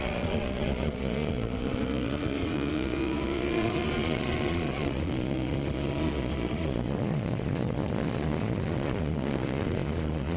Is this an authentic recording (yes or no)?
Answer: no